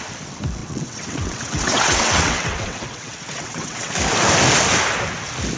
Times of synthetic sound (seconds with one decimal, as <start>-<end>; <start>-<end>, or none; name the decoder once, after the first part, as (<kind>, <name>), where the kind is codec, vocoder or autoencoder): 0.6-3.9 (vocoder, WaveNeXt)